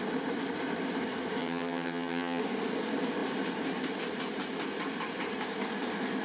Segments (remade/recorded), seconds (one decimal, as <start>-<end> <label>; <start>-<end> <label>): 0.0-1.4 recorded; 1.4-2.4 remade; 2.4-6.2 recorded